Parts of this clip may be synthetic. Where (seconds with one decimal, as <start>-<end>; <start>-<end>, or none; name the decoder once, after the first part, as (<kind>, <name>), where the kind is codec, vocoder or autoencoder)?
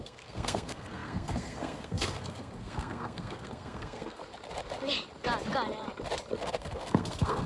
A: 0.0-4.2 (codec, SNAC); 6.4-7.5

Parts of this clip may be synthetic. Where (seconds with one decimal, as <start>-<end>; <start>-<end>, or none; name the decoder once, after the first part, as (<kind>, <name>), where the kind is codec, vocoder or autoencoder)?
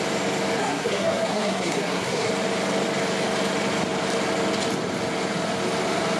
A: 0.6-2.3 (codec, SNAC)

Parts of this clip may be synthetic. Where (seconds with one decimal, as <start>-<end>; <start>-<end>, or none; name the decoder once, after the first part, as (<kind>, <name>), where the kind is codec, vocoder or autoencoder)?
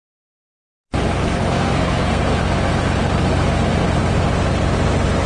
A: 1.2-2.2 (codec, SNAC)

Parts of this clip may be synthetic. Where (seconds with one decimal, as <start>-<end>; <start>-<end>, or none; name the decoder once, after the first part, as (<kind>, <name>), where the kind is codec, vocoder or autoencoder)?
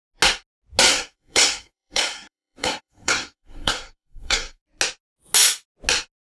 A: 0.9-4.6 (codec, SNAC)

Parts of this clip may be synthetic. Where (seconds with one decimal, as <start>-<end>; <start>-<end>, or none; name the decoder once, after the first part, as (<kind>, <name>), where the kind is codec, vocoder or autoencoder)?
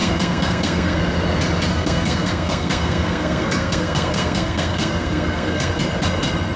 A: 0.0-1.0 (codec, SNAC); 1.7-5.7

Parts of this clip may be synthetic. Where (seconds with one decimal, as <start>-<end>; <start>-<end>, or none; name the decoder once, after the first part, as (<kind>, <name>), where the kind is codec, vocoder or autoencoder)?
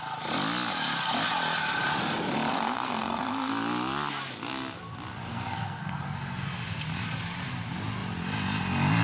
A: 2.5-3.5 (codec, SNAC); 5.3-6.0